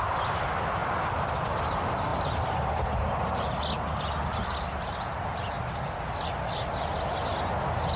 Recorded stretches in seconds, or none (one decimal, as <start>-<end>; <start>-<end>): 0.0-2.1; 2.7-4.3; 5.1-8.0